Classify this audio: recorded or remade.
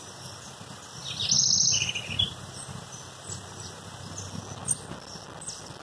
recorded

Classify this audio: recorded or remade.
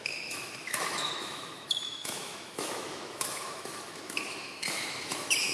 remade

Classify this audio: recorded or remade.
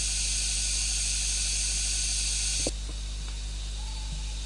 recorded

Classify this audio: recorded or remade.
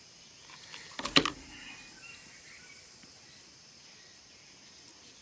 recorded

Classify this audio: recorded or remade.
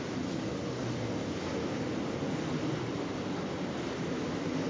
recorded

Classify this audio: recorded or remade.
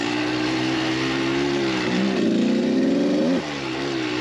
recorded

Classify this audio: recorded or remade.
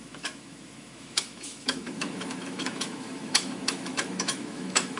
remade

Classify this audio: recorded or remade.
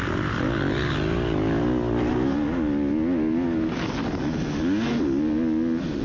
recorded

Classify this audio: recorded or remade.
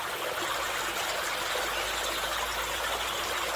recorded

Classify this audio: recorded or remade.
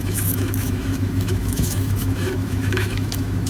remade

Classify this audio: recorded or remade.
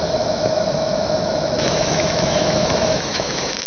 remade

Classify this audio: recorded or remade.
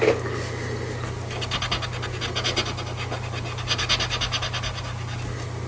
recorded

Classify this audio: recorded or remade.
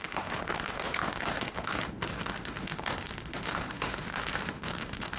remade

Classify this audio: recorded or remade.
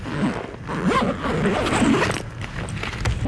recorded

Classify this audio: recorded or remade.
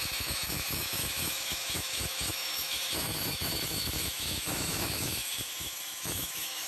remade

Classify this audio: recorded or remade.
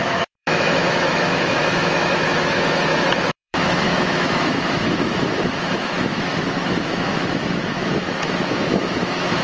remade